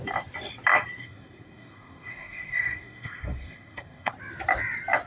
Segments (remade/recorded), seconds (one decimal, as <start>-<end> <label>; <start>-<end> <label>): 0.0-1.0 recorded; 1.0-4.1 remade; 4.1-5.1 recorded